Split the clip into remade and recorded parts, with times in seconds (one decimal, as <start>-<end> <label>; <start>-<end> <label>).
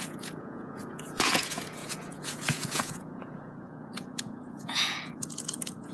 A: 0.0-5.9 remade